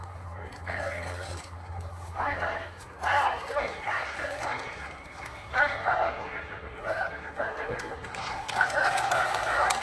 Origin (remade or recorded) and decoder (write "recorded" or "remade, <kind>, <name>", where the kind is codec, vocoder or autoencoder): remade, codec, SNAC